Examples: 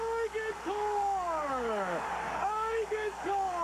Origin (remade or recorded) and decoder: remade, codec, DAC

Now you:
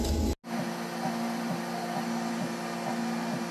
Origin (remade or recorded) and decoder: recorded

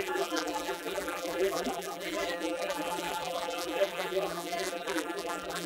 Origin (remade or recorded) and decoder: remade, vocoder, BigVGAN v2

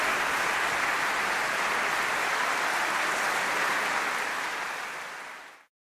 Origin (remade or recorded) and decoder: recorded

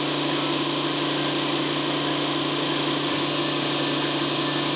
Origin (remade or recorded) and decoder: recorded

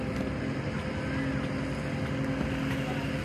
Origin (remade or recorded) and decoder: recorded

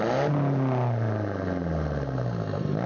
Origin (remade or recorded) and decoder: recorded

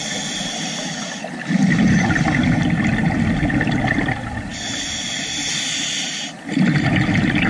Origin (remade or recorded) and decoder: recorded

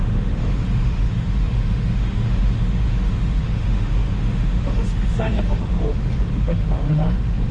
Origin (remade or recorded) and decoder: remade, autoencoder, DAC-VAE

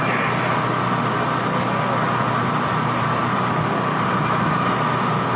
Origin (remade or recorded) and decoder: recorded